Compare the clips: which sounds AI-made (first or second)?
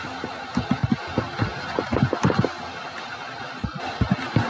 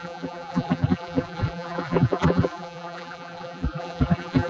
second